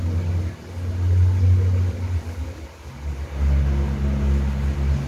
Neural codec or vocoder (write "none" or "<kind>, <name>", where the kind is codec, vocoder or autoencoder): none